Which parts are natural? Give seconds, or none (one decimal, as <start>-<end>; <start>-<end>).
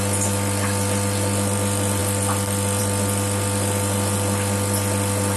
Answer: 0.0-5.4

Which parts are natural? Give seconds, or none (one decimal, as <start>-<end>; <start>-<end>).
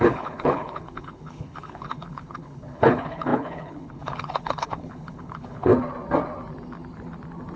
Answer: 5.7-7.6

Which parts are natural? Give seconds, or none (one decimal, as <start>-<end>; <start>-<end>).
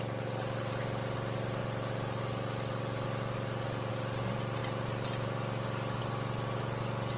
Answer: 0.0-7.2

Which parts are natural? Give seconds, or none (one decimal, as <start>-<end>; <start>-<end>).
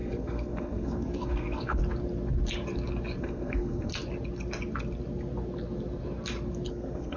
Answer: 1.8-3.2; 3.9-6.7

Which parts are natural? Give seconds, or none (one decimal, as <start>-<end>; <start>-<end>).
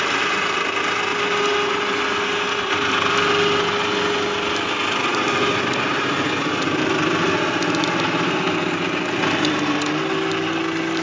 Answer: 0.0-11.0